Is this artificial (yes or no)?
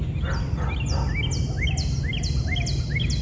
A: no